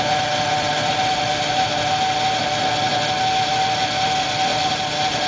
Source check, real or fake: real